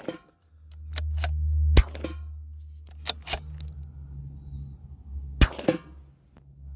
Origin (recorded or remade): recorded